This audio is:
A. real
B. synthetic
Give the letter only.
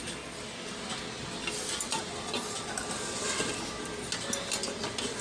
A